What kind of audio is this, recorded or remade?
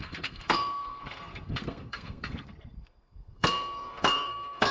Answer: remade